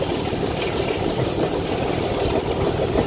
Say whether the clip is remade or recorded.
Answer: recorded